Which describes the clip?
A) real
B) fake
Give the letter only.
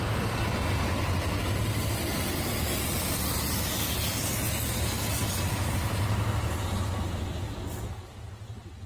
A